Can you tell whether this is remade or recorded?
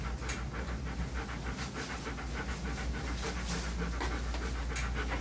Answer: recorded